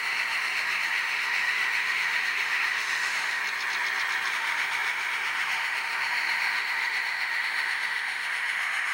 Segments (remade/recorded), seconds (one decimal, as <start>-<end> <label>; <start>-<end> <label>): 0.0-3.4 remade; 3.4-4.3 recorded; 4.3-8.9 remade